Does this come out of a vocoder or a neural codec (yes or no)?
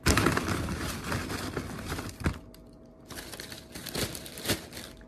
no